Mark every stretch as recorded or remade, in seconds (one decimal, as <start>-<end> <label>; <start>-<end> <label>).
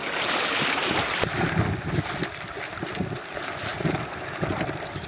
0.0-5.1 recorded